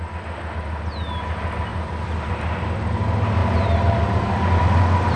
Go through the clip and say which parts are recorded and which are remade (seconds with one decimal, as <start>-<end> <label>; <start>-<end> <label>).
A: 0.0-3.4 recorded; 3.4-4.8 remade; 4.8-5.2 recorded